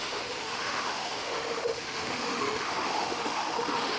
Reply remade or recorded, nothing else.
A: remade